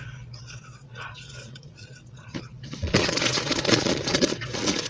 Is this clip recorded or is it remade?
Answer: remade